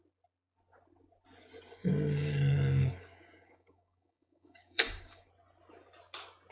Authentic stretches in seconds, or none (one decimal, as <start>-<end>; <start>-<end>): 0.0-1.8; 5.3-6.5